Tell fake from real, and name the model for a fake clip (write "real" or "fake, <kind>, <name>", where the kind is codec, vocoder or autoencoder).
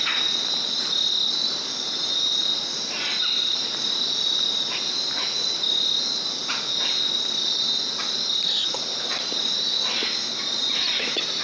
real